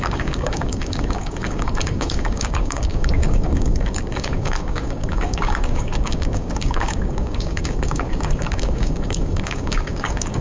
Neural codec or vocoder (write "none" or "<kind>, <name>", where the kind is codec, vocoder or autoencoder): codec, DAC